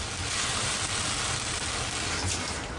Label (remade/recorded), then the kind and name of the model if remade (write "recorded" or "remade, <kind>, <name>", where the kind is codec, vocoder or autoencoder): recorded